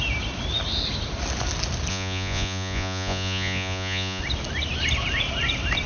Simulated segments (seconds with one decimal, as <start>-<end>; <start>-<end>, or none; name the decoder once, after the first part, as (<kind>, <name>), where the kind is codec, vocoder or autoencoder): 1.9-4.2 (vocoder, Vocos)